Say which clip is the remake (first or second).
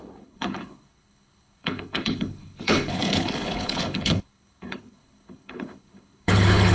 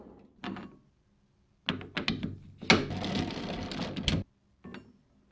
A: first